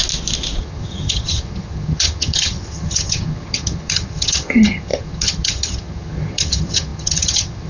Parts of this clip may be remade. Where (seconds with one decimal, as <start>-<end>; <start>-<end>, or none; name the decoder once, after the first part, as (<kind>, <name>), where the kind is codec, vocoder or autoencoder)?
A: 0.6-7.7 (vocoder, HiFi-GAN)